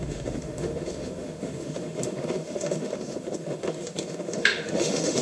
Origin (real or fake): fake